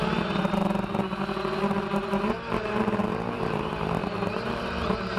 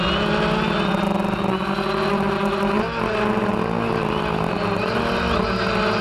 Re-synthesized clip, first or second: first